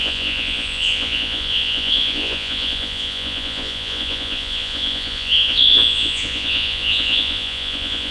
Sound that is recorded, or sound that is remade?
remade